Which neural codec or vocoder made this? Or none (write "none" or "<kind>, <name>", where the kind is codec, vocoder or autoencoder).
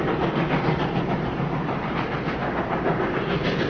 none